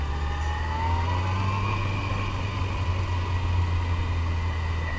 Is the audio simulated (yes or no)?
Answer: no